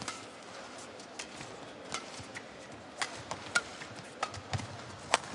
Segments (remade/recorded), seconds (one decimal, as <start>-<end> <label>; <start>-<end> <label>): 0.0-5.3 recorded